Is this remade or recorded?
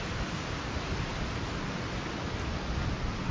recorded